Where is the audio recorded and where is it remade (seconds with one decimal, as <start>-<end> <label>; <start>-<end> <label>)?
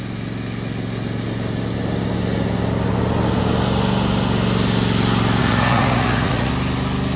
0.0-5.4 recorded; 5.4-6.5 remade; 6.5-7.2 recorded